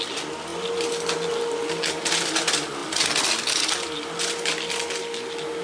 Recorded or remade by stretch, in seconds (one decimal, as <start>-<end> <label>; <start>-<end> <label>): 0.0-5.6 recorded

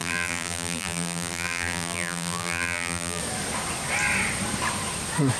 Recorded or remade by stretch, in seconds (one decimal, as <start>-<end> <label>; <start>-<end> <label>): 0.0-3.2 remade; 3.2-5.4 recorded

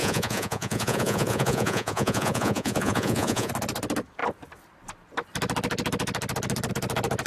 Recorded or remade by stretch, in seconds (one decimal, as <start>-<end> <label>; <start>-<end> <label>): 0.0-3.5 remade; 3.5-7.3 recorded

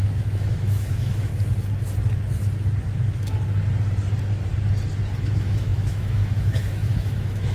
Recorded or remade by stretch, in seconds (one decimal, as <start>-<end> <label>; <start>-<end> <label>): 0.0-1.3 remade; 1.3-5.2 recorded; 5.2-7.5 remade

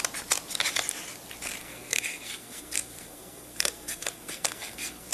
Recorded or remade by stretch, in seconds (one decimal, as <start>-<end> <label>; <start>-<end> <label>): 0.0-1.6 recorded; 1.6-5.1 remade

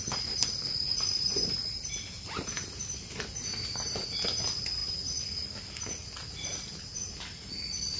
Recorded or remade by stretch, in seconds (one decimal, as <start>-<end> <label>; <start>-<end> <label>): 0.0-8.0 recorded

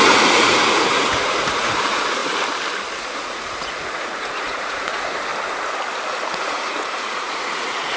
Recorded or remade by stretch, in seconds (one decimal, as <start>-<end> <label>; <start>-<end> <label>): 0.0-2.2 remade; 2.2-3.0 recorded; 3.0-5.3 remade; 5.3-6.2 recorded; 6.2-8.0 remade